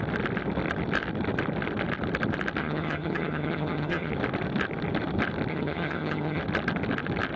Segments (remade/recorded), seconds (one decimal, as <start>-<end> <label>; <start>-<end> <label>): 0.0-2.6 recorded; 2.6-4.1 remade; 4.1-5.5 recorded; 5.5-6.4 remade; 6.4-7.4 recorded